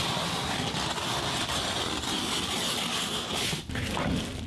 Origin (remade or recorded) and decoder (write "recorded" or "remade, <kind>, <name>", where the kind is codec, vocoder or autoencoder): recorded